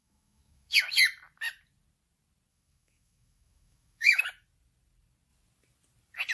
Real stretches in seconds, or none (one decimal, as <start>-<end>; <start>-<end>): 0.8-2.5; 4.2-6.3